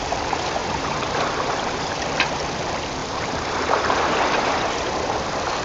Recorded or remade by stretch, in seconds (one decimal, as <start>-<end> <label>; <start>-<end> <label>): 0.0-0.6 recorded; 0.6-1.9 remade; 1.9-3.0 recorded; 3.0-4.8 remade; 4.8-5.6 recorded